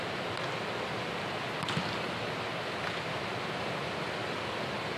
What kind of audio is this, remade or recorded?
recorded